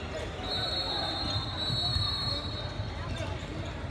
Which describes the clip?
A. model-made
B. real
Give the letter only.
B